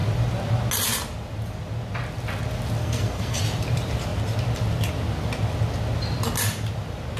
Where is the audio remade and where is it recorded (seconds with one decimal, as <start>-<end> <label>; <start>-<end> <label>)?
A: 0.0-2.8 recorded; 2.8-3.4 remade; 3.4-7.2 recorded